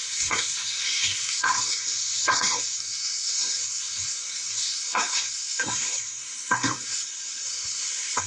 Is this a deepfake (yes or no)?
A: yes